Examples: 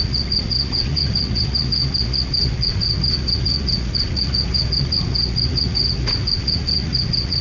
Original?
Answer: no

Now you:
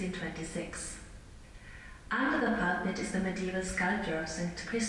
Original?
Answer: yes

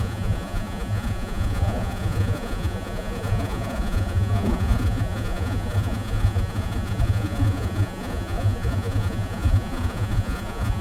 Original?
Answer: no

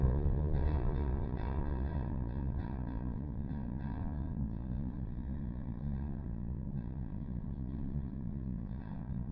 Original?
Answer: no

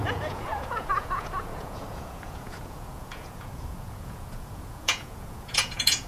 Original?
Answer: no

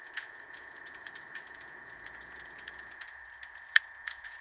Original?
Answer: no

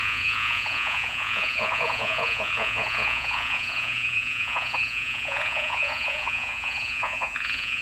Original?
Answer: no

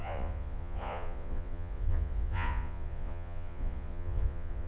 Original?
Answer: no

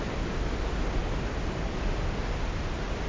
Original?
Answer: yes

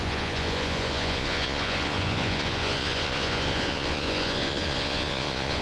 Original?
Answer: no